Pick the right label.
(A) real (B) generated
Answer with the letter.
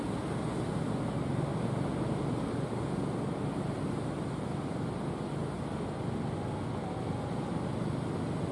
A